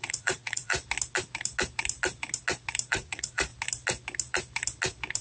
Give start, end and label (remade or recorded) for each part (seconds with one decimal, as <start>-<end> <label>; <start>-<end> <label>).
0.0-0.7 remade; 0.7-2.9 recorded; 2.9-3.5 remade; 3.5-5.2 recorded

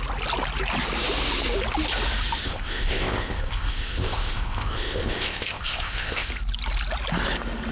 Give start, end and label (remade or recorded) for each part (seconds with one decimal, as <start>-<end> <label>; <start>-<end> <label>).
0.0-2.4 recorded; 2.4-6.3 remade; 6.3-7.7 recorded

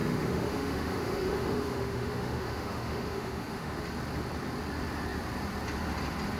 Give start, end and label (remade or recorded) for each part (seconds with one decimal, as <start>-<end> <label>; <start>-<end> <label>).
0.0-3.8 remade; 3.8-6.4 recorded